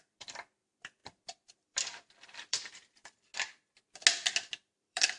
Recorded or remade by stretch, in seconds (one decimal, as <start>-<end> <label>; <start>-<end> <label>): 0.0-3.3 remade; 3.3-4.7 recorded; 4.7-5.2 remade